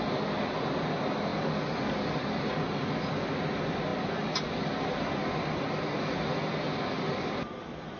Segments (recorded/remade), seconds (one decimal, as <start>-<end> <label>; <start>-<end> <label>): 0.0-8.0 recorded